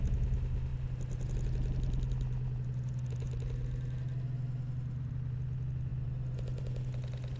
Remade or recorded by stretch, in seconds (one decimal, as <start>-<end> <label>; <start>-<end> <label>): 0.0-7.4 recorded